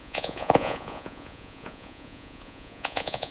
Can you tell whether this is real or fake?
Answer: fake